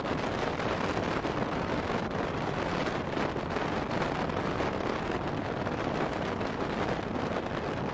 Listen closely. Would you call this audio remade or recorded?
recorded